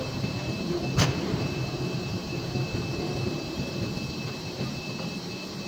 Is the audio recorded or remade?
remade